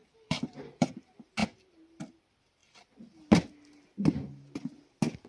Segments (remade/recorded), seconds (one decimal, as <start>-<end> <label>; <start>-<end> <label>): 0.0-0.9 remade; 0.9-5.3 recorded